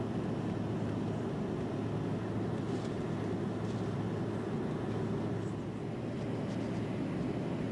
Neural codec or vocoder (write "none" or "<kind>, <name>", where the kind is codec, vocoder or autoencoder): none